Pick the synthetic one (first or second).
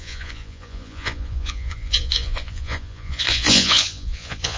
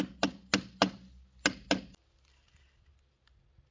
first